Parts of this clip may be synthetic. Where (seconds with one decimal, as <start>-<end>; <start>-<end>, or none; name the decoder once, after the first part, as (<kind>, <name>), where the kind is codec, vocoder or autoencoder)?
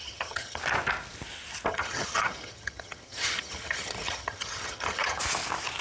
0.0-0.6 (vocoder, HiFi-GAN); 1.7-5.2